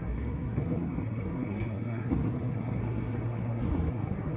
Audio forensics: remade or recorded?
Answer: remade